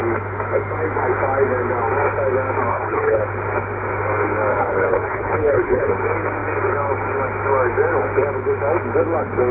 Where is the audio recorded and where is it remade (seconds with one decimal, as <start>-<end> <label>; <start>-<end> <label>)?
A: 0.0-2.7 recorded; 2.7-3.2 remade; 3.2-4.5 recorded; 4.5-5.9 remade; 5.9-9.5 recorded